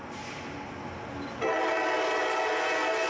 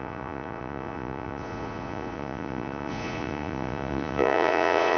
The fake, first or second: second